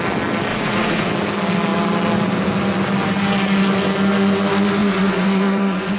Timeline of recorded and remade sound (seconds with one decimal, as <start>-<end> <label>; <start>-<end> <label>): 0.0-0.5 recorded; 0.5-1.1 remade; 1.1-4.8 recorded; 4.8-6.0 remade